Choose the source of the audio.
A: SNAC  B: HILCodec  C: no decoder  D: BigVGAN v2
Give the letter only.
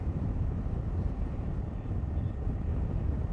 C